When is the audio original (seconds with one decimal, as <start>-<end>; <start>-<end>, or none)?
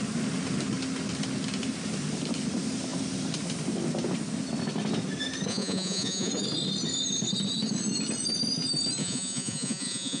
0.0-5.5; 6.3-9.0